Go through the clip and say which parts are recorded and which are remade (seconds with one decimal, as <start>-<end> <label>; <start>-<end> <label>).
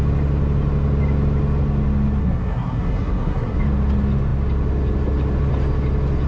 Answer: 0.0-2.2 recorded; 2.2-3.6 remade; 3.6-6.3 recorded